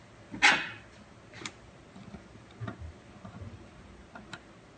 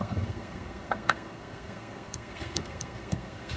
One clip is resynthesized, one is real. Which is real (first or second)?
first